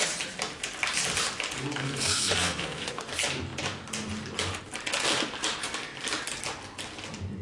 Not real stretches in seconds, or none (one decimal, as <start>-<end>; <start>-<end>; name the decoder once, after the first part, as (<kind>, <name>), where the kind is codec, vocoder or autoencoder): 1.8-3.1 (codec, SNAC)